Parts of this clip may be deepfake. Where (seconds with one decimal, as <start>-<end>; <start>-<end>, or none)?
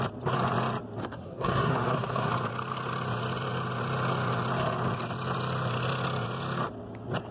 1.0-2.3